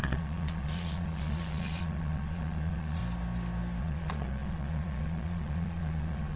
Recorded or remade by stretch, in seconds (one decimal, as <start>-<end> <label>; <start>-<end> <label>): 0.0-3.0 remade; 3.0-3.8 recorded; 3.8-6.4 remade